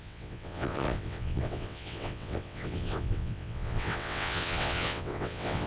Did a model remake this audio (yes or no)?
yes